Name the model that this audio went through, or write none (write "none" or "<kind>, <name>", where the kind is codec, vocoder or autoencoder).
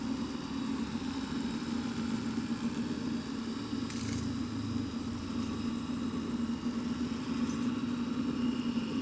none